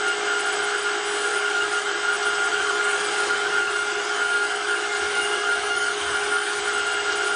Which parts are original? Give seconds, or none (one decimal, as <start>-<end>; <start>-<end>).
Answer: 0.0-1.3; 1.9-2.5; 6.6-7.4